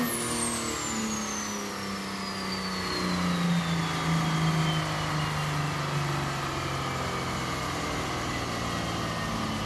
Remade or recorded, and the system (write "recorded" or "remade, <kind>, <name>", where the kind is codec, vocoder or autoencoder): recorded